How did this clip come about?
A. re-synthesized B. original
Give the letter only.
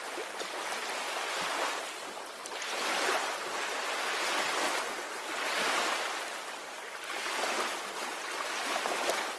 B